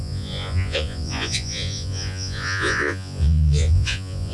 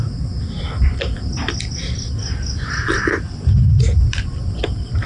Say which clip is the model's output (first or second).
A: first